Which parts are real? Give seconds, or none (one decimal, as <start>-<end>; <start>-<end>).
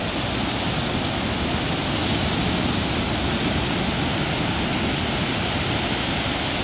0.0-6.6